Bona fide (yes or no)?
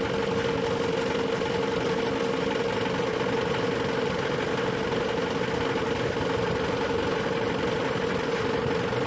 yes